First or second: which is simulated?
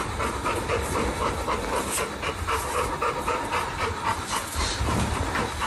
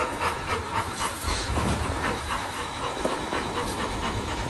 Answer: second